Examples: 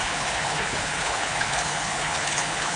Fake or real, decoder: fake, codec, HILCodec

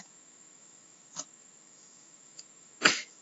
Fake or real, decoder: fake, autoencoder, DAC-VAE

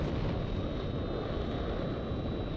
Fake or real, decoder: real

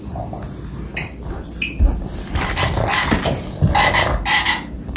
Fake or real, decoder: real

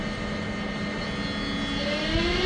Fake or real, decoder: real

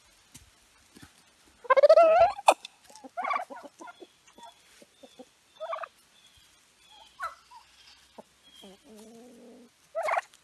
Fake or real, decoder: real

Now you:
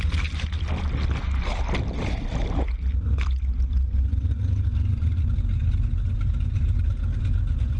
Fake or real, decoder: real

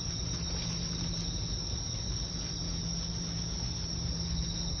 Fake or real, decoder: real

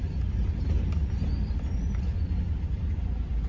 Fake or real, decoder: real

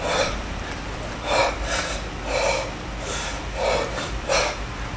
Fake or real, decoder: real